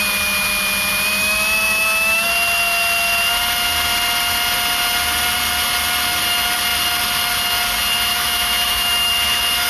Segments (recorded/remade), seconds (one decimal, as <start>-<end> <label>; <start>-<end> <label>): 0.0-1.2 recorded; 1.2-2.3 remade; 2.3-8.1 recorded; 8.1-9.1 remade; 9.1-9.7 recorded